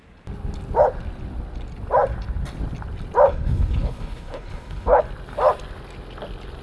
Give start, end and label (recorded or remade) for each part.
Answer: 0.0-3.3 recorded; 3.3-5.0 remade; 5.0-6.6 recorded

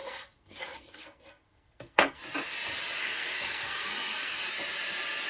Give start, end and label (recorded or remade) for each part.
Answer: 0.0-2.2 remade; 2.2-3.0 recorded; 3.0-4.5 remade; 4.5-5.3 recorded

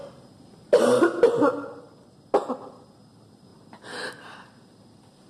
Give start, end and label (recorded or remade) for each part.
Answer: 0.0-5.3 recorded

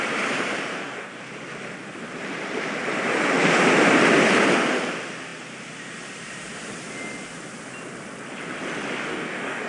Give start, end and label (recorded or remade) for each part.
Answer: 0.0-0.7 recorded; 0.7-1.2 remade; 1.2-9.1 recorded; 9.1-9.7 remade

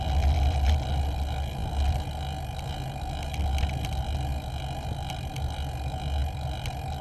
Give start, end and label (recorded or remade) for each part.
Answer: 0.0-7.0 recorded

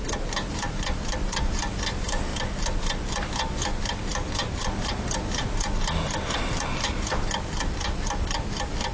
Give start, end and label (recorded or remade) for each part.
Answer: 0.0-2.3 remade; 2.3-6.3 recorded; 6.3-8.9 remade